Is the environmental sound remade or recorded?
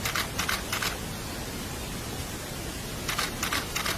recorded